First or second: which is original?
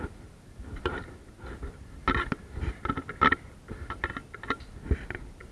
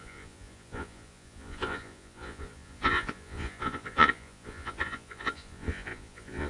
first